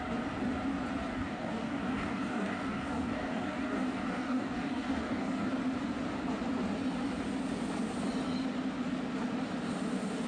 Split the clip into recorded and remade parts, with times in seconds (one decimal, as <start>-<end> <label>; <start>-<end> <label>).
0.0-1.1 recorded; 1.1-5.5 remade; 5.5-10.3 recorded

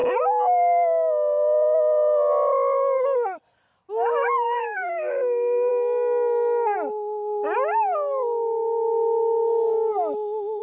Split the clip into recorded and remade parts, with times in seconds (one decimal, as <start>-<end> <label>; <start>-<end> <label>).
0.0-3.9 recorded; 3.9-5.7 remade; 5.7-10.6 recorded

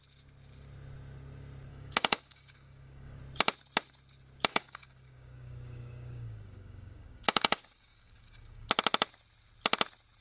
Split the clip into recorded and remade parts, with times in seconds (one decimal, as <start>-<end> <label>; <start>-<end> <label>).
0.0-1.7 recorded; 1.7-3.2 remade; 3.2-4.5 recorded; 4.5-8.7 remade; 8.7-10.2 recorded

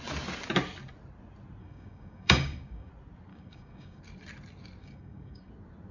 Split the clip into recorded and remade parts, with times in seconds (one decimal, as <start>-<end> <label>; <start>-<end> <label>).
0.0-1.6 recorded; 1.6-2.9 remade; 2.9-3.3 recorded; 3.3-4.0 remade; 4.0-4.8 recorded; 4.8-5.5 remade; 5.5-5.9 recorded

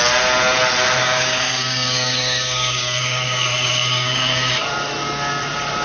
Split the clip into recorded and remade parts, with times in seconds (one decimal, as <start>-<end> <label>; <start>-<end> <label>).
0.0-1.0 recorded; 1.0-4.5 remade; 4.5-5.8 recorded